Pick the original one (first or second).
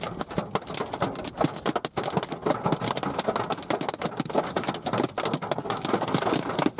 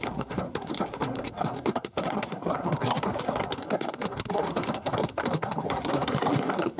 first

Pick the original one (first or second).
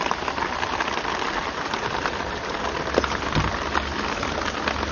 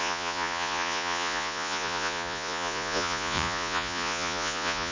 first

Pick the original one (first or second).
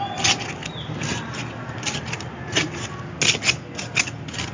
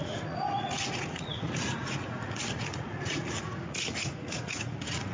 first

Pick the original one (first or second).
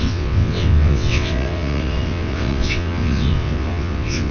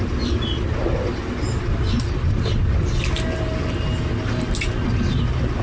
second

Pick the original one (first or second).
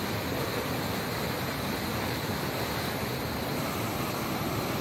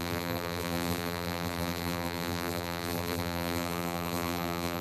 first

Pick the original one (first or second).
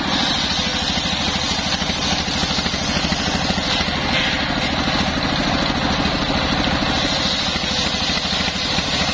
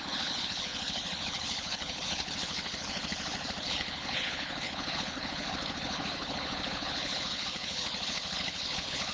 first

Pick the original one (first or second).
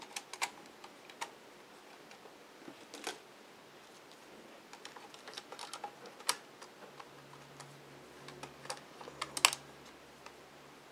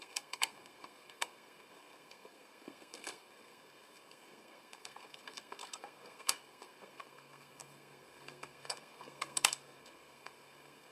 first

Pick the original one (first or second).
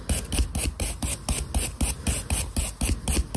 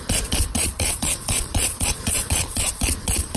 first